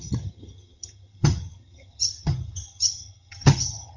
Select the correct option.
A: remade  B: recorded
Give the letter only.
A